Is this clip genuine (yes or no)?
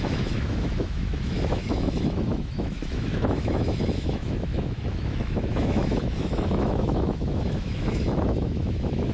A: no